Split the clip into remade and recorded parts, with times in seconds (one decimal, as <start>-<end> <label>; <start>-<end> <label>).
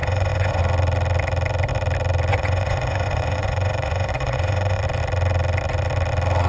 0.0-0.6 remade; 0.6-2.3 recorded; 2.3-4.8 remade; 4.8-6.5 recorded